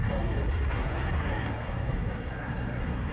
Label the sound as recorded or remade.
remade